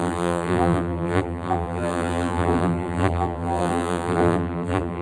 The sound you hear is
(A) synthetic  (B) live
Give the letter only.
A